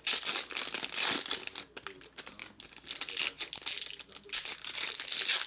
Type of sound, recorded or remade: recorded